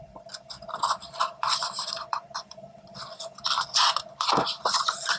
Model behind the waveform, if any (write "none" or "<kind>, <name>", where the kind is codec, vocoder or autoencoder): vocoder, BigVGAN v2